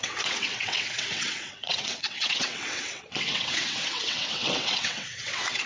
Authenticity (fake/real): fake